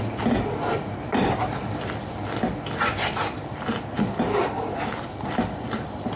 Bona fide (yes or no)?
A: yes